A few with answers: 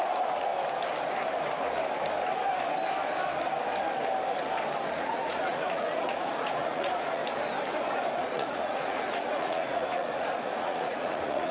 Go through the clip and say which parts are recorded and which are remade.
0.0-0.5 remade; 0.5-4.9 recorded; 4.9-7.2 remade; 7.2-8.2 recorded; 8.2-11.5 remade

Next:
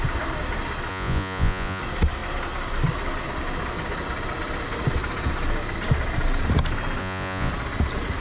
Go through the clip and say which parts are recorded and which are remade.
0.0-0.9 recorded; 0.9-1.8 remade; 1.8-7.0 recorded; 7.0-7.5 remade; 7.5-8.2 recorded

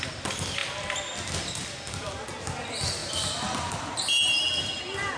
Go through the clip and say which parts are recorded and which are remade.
0.0-5.2 recorded

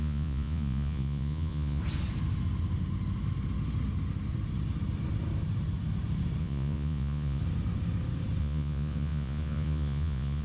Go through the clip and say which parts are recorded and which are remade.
0.0-1.8 remade; 1.8-6.4 recorded; 6.4-7.4 remade; 7.4-8.4 recorded; 8.4-10.4 remade